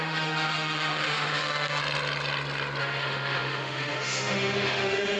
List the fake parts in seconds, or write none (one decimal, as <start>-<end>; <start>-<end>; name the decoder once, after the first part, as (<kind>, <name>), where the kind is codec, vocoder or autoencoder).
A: 0.0-1.8 (autoencoder, DAC-VAE); 2.8-5.2